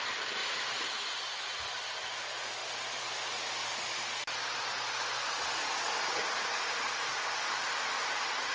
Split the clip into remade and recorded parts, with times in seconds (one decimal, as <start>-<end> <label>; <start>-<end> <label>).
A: 0.0-8.5 recorded

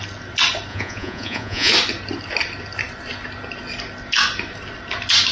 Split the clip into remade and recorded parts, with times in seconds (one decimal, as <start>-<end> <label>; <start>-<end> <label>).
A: 0.0-0.7 recorded; 0.7-1.7 remade; 1.7-5.3 recorded